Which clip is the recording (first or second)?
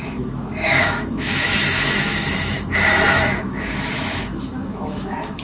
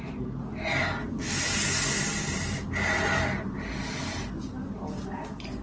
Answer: second